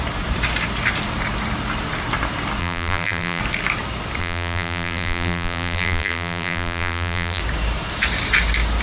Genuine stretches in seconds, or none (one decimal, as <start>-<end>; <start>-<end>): 0.0-2.6; 3.4-4.2; 7.4-8.8